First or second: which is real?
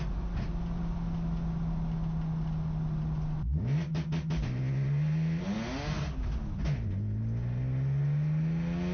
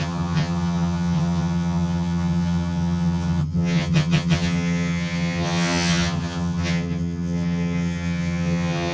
first